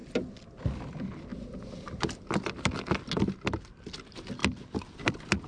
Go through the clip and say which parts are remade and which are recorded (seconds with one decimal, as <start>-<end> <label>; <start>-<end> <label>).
0.0-5.5 recorded